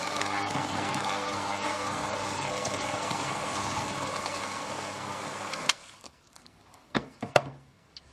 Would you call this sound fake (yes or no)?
yes